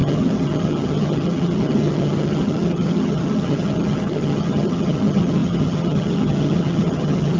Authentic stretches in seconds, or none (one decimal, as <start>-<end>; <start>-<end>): none

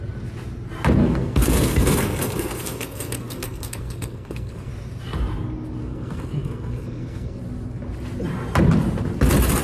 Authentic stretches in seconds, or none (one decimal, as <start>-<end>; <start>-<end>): 0.0-1.0; 4.7-5.8; 7.4-9.6

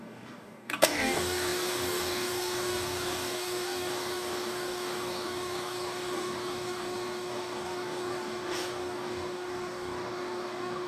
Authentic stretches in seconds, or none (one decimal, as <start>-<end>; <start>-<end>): none

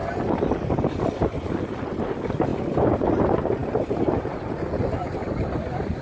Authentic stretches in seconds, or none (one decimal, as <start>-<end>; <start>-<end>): 1.3-6.0

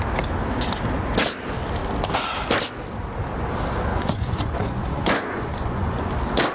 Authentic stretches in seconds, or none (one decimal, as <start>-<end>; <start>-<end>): 0.0-3.9; 6.1-6.5

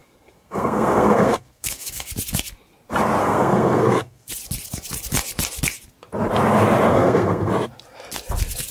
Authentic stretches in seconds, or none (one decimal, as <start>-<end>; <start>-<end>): 2.1-3.2; 4.3-6.9; 7.5-8.7